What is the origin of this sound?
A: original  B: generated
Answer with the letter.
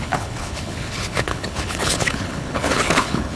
B